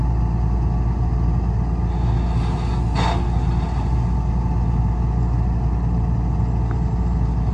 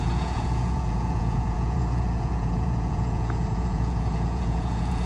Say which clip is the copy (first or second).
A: second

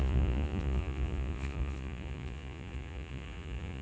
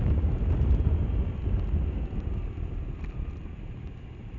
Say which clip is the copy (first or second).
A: first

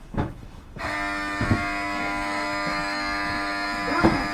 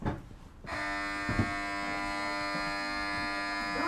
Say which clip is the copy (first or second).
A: first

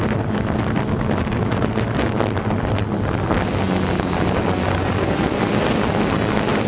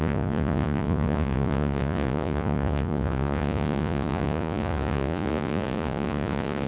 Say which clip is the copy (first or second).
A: second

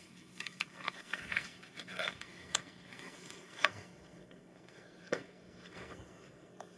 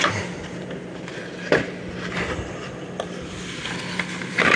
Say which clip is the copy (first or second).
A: first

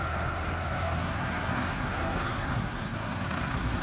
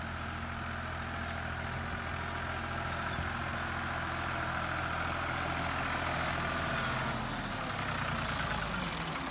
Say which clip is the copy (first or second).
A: first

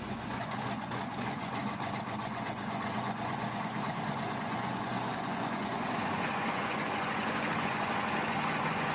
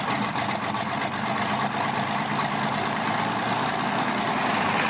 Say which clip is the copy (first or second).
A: first